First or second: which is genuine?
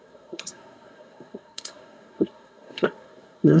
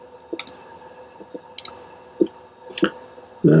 second